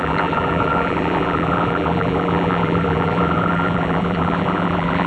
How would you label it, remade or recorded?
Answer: remade